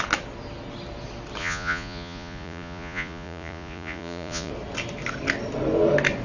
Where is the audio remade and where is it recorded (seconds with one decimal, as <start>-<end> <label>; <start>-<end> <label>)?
0.0-1.4 recorded; 1.4-4.5 remade; 4.5-6.2 recorded